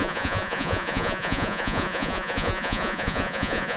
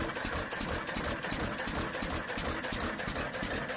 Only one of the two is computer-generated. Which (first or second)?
first